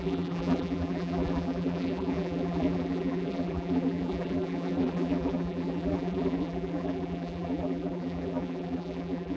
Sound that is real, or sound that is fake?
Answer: fake